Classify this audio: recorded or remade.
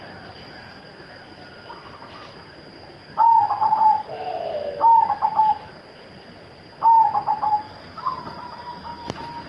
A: recorded